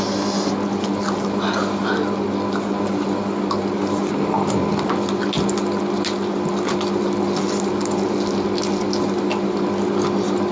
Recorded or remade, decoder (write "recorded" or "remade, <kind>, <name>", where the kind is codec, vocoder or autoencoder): recorded